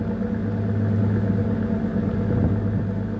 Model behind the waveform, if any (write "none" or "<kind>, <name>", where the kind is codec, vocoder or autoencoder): none